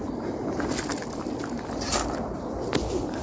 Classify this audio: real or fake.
fake